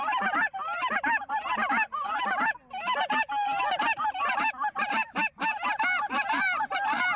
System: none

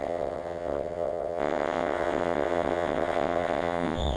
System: vocoder, WaveNeXt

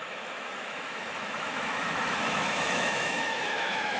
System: autoencoder, DAC-VAE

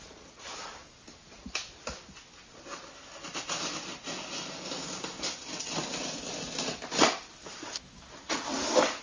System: none